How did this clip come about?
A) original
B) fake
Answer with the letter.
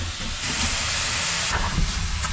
A